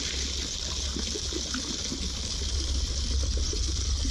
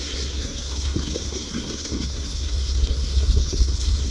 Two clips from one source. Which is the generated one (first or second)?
second